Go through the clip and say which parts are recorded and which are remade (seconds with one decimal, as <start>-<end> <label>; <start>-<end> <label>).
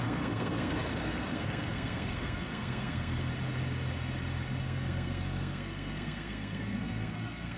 0.0-3.3 remade; 3.3-4.6 recorded; 4.6-7.6 remade